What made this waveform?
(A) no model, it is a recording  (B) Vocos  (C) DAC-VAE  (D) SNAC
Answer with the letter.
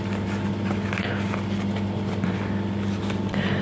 A